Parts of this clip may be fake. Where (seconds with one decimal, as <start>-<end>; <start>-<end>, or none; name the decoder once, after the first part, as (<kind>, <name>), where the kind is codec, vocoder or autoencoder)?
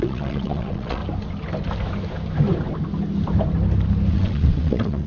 0.0-1.0 (vocoder, WaveNeXt); 4.1-5.1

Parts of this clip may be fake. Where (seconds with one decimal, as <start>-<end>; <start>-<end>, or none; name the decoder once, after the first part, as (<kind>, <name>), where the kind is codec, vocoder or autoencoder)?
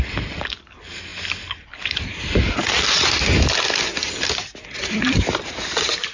none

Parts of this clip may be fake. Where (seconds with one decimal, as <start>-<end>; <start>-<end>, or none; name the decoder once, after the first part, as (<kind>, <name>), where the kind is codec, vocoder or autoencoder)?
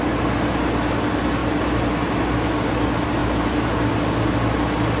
none